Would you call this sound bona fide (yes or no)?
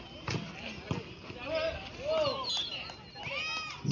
yes